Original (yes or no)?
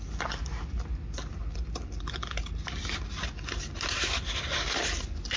yes